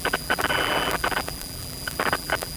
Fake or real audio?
fake